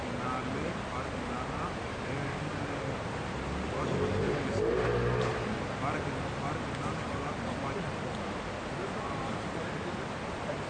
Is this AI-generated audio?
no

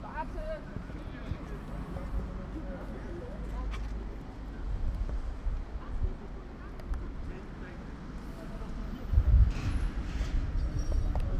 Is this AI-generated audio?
no